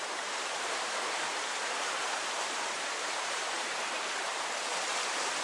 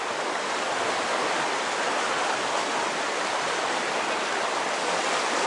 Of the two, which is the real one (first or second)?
second